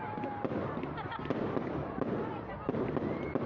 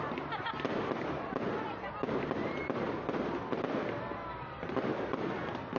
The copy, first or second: first